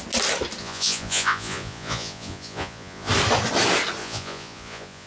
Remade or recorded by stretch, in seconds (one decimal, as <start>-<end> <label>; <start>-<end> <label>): 0.0-0.6 recorded; 0.6-3.1 remade; 3.1-4.0 recorded; 4.0-5.1 remade